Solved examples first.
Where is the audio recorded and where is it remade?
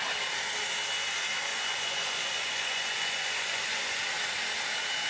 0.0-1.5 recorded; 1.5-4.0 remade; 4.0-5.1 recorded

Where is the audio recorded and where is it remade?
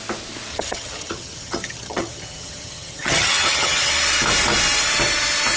0.0-0.5 recorded; 0.5-3.9 remade; 3.9-5.6 recorded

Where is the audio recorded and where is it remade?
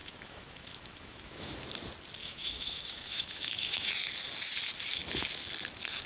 0.0-1.5 remade; 1.5-2.2 recorded; 2.2-3.9 remade; 3.9-6.1 recorded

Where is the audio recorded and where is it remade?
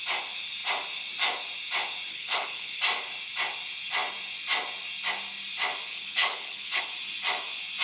0.0-2.1 recorded; 2.1-2.8 remade; 2.8-5.9 recorded; 5.9-6.8 remade; 6.8-7.8 recorded